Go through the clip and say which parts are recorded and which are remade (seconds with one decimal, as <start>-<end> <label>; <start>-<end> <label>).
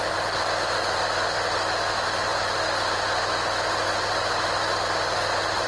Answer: 0.0-5.7 recorded